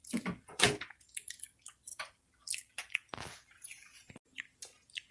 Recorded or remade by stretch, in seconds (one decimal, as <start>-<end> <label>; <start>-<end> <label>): 0.0-0.7 remade; 0.7-1.9 recorded; 1.9-4.1 remade; 4.1-5.1 recorded